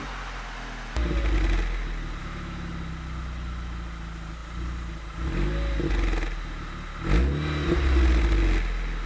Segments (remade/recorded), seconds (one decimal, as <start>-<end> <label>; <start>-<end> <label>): 0.0-2.2 recorded; 2.2-2.7 remade; 2.7-9.1 recorded